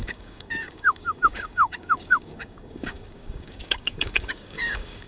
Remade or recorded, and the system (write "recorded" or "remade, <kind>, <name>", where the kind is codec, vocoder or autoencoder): remade, codec, DAC